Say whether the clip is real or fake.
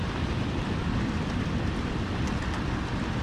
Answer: real